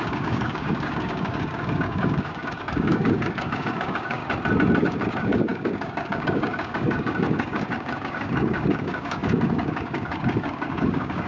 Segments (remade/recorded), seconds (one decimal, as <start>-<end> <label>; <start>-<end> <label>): 0.0-4.2 remade; 4.2-4.8 recorded; 4.8-11.3 remade